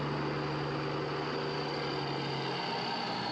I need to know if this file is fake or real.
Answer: real